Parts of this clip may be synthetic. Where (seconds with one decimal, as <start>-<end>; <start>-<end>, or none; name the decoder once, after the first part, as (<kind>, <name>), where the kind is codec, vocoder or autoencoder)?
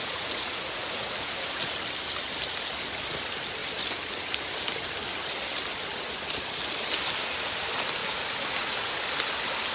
0.0-1.3 (vocoder, Vocos); 8.0-8.9